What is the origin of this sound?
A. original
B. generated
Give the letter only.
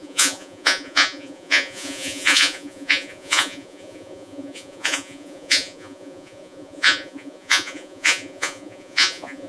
B